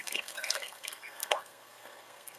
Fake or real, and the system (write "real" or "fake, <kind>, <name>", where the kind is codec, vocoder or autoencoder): fake, codec, SNAC